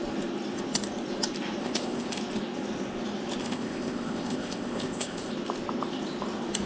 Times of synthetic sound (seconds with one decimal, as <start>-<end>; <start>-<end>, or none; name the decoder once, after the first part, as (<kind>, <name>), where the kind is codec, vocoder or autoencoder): 1.6-2.2 (codec, ZipCodec); 3.4-5.3